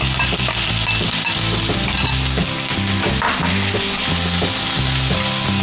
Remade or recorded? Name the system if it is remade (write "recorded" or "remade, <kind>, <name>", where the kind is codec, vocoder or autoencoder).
recorded